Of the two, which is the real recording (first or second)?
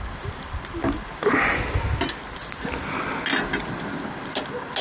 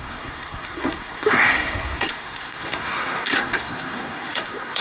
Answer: first